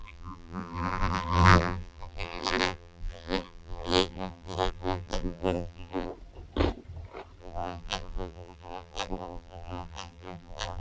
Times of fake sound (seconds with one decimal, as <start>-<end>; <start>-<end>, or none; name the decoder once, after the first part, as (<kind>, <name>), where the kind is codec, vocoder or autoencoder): 0.0-6.1 (vocoder, BigVGAN v2); 7.4-10.8